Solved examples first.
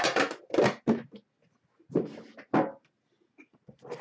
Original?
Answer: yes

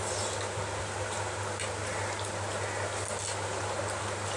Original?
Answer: yes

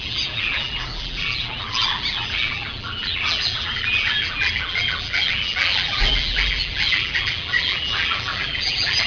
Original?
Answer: no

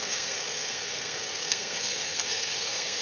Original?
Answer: no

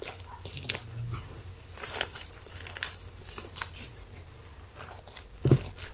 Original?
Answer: yes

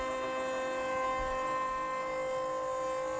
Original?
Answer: yes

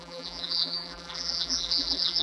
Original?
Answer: no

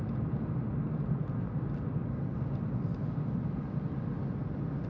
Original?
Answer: yes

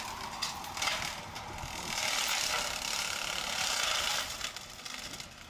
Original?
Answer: yes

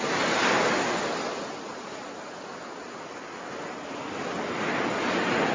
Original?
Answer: yes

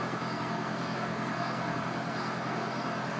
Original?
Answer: no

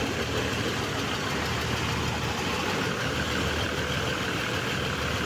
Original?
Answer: yes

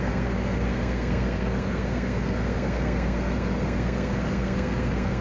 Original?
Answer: no